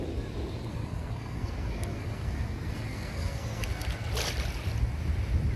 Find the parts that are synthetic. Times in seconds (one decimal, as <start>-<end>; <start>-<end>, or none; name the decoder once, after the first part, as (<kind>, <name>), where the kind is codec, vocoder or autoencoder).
0.7-4.1 (codec, SNAC)